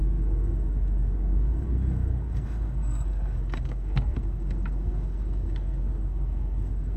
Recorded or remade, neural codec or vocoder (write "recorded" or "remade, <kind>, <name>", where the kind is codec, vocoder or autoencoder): remade, codec, SNAC